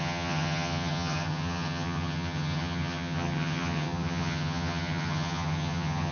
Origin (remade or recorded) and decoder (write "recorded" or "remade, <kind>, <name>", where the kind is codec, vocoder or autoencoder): remade, vocoder, HiFi-GAN